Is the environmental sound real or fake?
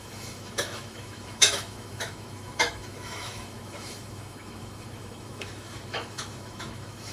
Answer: fake